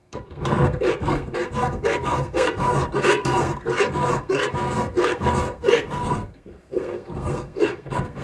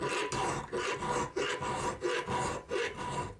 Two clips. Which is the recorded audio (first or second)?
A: second